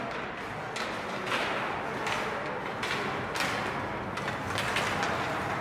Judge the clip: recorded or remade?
recorded